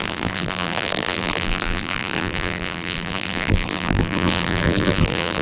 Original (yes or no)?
no